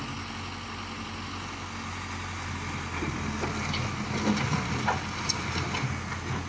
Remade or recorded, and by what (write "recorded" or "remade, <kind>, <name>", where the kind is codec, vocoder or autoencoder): recorded